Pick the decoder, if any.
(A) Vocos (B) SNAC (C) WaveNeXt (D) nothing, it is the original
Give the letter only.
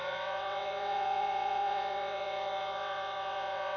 C